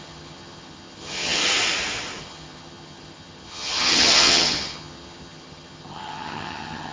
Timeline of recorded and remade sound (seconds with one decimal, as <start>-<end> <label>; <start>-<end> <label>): 0.0-1.4 remade; 1.4-2.2 recorded; 2.2-6.9 remade